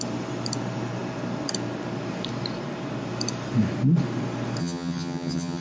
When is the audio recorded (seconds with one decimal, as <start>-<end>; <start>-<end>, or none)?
0.0-4.6